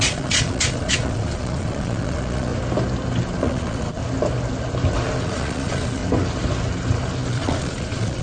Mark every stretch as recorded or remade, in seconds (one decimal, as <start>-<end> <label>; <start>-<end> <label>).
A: 0.0-2.5 remade; 2.5-3.4 recorded; 3.4-4.0 remade; 4.0-5.2 recorded; 5.2-6.0 remade; 6.0-7.3 recorded; 7.3-8.2 remade